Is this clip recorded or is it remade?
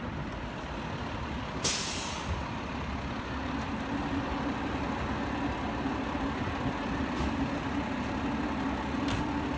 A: recorded